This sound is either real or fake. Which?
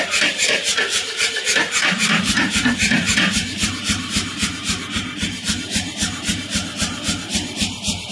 fake